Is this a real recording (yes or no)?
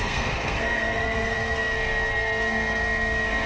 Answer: no